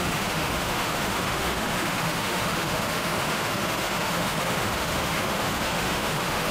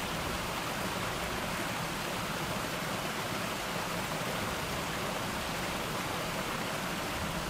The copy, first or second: first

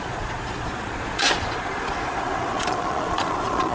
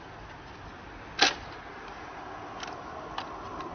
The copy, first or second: first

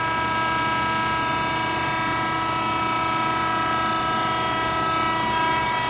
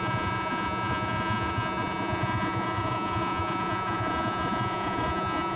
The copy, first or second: second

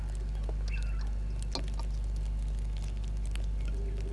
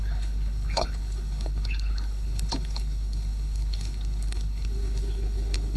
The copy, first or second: second